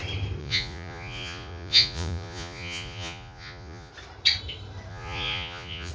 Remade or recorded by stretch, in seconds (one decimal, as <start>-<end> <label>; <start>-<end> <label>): 0.0-0.4 recorded; 0.4-3.9 remade; 3.9-4.9 recorded; 4.9-5.9 remade